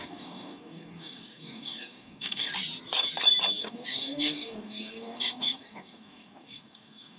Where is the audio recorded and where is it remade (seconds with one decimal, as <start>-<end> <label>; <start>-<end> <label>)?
0.0-2.5 remade; 2.5-3.6 recorded; 3.6-7.2 remade